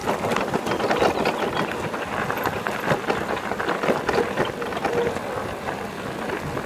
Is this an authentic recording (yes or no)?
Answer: yes